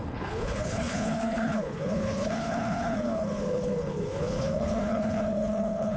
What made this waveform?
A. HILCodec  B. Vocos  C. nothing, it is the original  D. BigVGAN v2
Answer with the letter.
A